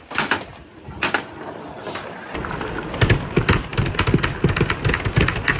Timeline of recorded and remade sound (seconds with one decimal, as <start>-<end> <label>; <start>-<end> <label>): 0.0-5.6 recorded